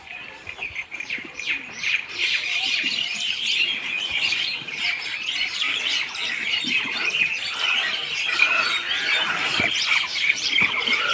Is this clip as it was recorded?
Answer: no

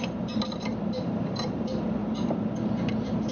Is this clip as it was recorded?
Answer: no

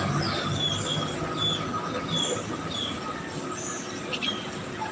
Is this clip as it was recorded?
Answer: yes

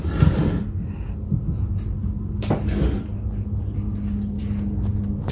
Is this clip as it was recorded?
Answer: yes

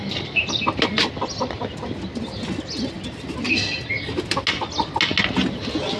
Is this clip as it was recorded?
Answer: yes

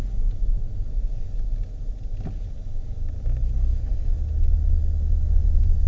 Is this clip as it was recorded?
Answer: yes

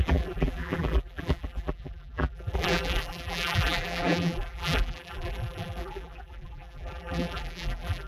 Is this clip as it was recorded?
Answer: no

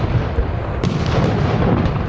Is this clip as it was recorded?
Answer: no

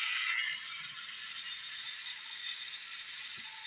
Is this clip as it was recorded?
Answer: no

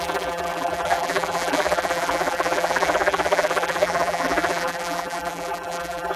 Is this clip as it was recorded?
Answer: no